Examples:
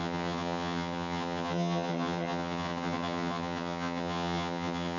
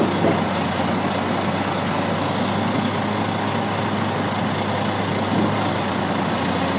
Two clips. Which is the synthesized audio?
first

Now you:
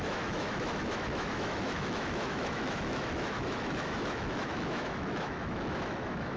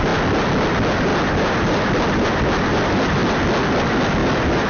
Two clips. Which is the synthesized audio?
first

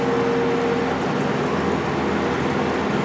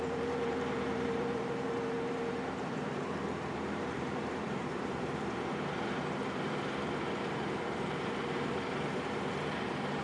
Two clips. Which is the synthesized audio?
second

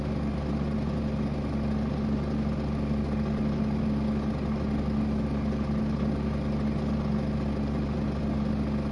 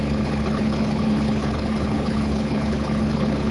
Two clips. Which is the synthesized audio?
second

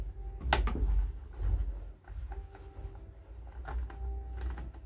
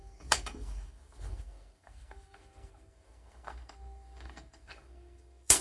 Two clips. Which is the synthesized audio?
second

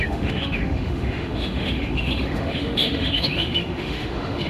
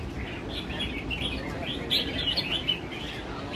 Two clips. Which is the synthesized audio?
first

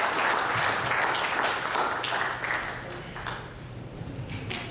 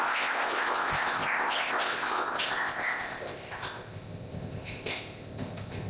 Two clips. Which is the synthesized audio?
second